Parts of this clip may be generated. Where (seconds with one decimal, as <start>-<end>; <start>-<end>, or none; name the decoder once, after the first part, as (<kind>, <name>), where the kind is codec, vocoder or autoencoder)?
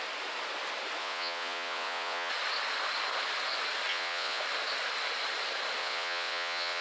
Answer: 1.0-2.3 (vocoder, WaveNeXt); 3.9-4.4; 5.8-6.8